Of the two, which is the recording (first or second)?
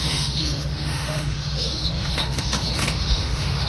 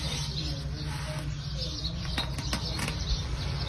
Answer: second